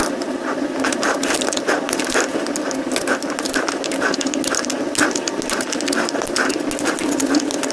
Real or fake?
real